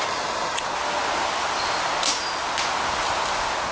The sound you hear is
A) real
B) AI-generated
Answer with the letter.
A